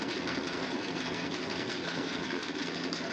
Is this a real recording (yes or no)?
no